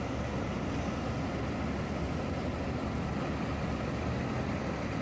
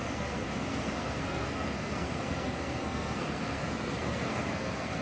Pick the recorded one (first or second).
first